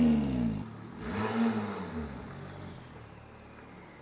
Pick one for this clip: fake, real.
real